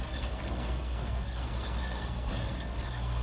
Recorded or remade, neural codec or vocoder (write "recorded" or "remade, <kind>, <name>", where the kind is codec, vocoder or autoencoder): remade, codec, SNAC